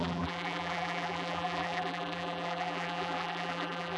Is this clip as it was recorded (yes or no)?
no